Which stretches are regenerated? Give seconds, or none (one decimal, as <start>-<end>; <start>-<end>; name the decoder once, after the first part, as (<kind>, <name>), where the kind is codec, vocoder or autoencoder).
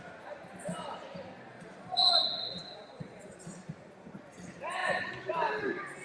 1.5-3.3 (vocoder, Vocos)